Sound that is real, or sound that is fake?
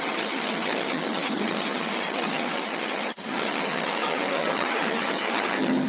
fake